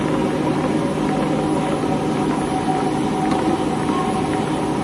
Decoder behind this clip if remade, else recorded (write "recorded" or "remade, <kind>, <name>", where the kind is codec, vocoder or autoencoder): recorded